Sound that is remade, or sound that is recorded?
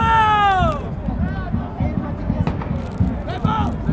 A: recorded